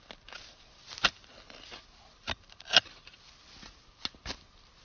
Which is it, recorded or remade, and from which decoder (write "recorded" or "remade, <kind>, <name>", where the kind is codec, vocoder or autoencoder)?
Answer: recorded